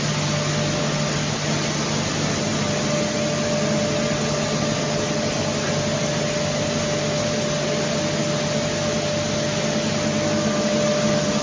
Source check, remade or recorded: recorded